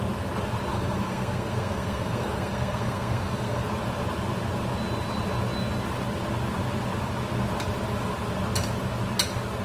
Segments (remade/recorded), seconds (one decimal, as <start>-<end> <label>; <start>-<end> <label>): 0.0-0.7 recorded; 0.7-3.6 remade; 3.6-9.6 recorded